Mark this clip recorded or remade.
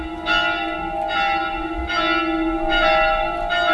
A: recorded